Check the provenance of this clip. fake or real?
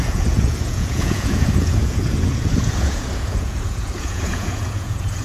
fake